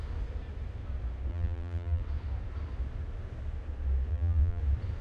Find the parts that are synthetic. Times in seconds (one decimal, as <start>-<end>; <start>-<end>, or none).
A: 1.3-2.0; 4.1-4.6